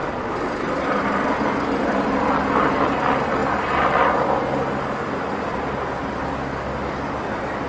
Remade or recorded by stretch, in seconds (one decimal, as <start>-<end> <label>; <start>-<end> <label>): 0.0-0.6 remade; 0.6-7.7 recorded